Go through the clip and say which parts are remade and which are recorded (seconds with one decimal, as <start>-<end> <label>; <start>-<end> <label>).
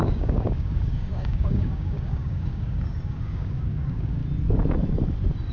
0.0-4.2 remade; 4.2-5.5 recorded